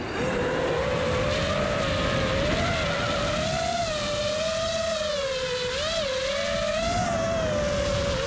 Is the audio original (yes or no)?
yes